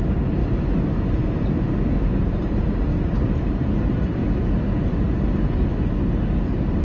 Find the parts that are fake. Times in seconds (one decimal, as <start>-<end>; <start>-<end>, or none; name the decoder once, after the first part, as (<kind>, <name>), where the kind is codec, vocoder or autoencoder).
0.0-4.2 (vocoder, BigVGAN v2); 5.1-5.7